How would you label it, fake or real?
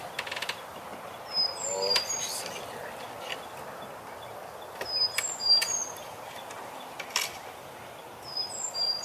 real